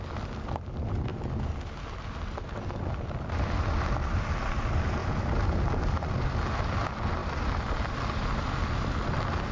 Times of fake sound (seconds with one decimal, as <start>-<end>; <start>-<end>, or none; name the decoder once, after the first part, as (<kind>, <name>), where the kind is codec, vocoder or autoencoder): 5.0-6.1 (vocoder, BigVGAN v2); 7.2-8.5